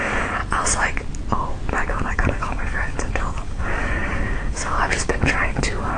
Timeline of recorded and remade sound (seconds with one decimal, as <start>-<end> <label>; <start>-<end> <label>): 0.0-0.4 remade; 0.4-1.9 recorded; 1.9-6.0 remade